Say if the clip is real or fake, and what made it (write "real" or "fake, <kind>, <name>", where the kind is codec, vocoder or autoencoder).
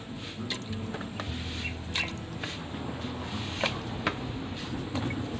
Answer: real